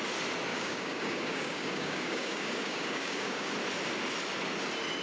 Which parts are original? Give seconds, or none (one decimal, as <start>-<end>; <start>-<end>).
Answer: 0.0-0.5; 3.5-5.0